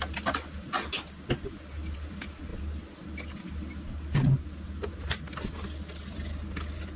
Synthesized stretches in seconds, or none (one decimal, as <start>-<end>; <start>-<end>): none